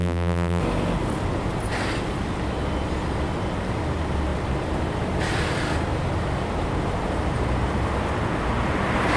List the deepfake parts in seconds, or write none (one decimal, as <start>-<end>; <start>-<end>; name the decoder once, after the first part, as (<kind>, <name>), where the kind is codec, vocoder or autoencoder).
0.0-0.6 (vocoder, BigVGAN v2)